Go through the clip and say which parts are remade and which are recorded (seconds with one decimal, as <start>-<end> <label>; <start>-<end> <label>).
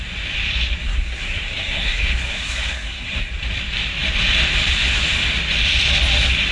0.0-0.8 recorded; 0.8-3.3 remade; 3.3-6.5 recorded